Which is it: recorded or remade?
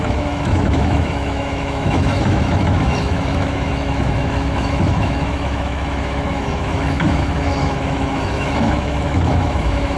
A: remade